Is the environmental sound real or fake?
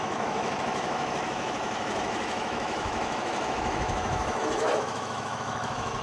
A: fake